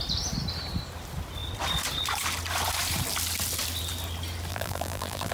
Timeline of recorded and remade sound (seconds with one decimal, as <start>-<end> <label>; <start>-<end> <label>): 0.0-4.5 recorded; 4.5-5.3 remade